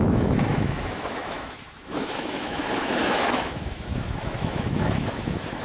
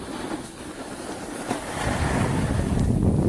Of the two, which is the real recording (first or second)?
second